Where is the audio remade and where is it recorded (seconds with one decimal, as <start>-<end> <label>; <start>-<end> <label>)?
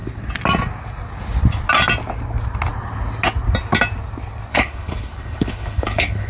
0.0-4.5 recorded; 4.5-6.3 remade